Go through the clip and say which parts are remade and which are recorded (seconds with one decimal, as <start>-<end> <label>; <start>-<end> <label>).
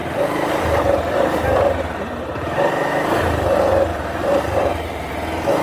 0.0-3.4 remade; 3.4-3.9 recorded; 3.9-5.1 remade; 5.1-5.6 recorded